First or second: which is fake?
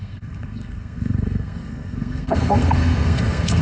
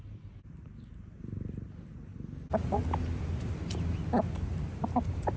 first